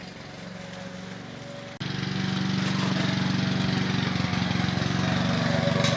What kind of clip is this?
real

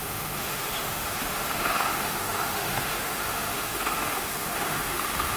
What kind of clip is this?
fake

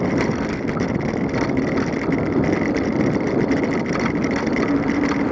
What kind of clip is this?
fake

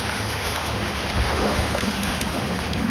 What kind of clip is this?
fake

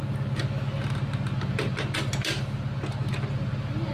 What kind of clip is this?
real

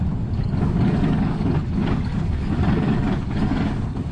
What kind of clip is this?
fake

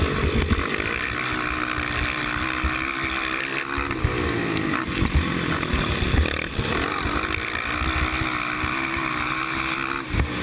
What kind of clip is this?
real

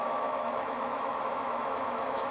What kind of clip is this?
fake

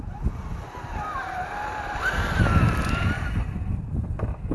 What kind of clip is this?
real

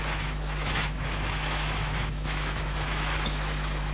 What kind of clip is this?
fake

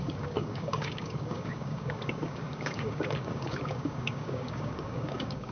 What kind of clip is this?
fake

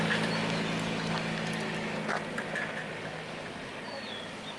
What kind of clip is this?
real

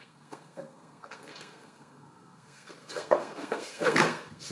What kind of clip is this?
fake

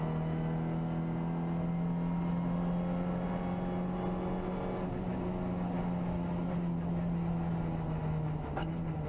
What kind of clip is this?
real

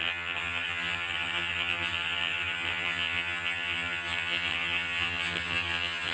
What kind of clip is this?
fake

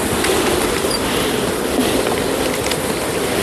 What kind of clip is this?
fake